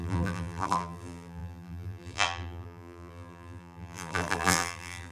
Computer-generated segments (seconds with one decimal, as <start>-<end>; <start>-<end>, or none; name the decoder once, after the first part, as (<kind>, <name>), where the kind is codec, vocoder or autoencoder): 0.0-5.1 (vocoder, BigVGAN v2)